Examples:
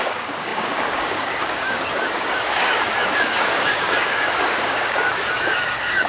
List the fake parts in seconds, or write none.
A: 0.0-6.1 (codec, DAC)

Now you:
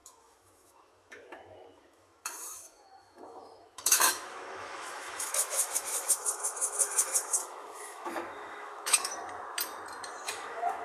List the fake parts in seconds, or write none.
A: 0.0-9.1 (autoencoder, DAC-VAE); 10.2-10.8

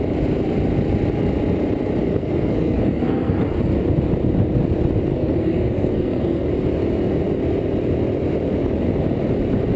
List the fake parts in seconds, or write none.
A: 2.0-3.5 (codec, SNAC); 5.1-6.5

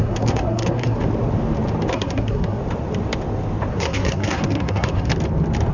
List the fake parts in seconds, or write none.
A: 0.0-1.0 (codec, SNAC); 1.9-2.6; 3.7-5.1

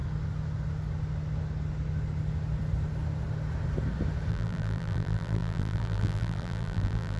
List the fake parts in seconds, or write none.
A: 4.3-7.2 (vocoder, BigVGAN v2)

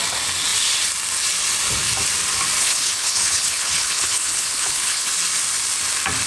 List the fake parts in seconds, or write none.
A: 2.6-5.1 (codec, HILCodec)

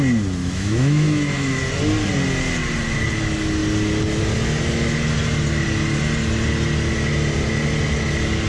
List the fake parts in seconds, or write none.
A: 0.4-1.6 (autoencoder, DAC-VAE)

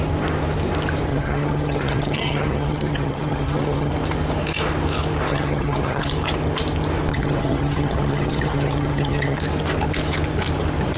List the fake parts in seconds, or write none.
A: 1.1-3.9 (vocoder, HiFi-GAN); 5.3-6.1; 7.1-9.4